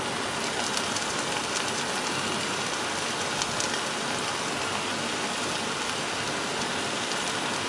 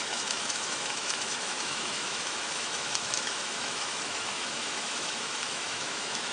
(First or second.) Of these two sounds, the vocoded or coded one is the second